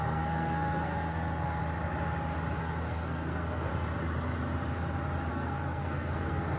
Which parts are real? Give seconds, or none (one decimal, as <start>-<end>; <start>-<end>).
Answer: 1.6-2.6; 3.7-5.3